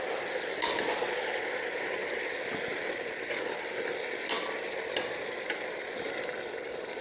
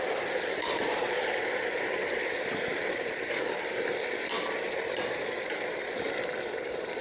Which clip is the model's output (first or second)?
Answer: second